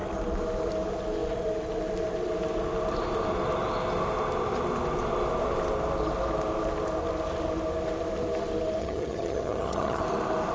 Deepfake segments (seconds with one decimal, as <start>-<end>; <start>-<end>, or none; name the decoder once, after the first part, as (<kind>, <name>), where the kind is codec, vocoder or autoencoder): 8.8-10.0 (vocoder, HiFi-GAN)